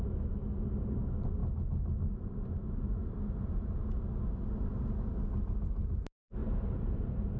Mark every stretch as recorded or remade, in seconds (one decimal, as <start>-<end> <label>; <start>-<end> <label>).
0.0-6.4 recorded; 6.4-7.4 remade